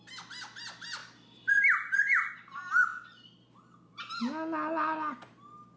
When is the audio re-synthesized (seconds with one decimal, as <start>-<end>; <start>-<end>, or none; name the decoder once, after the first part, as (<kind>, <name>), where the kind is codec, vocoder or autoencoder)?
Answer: 1.0-2.3 (vocoder, BigVGAN v2); 2.9-4.2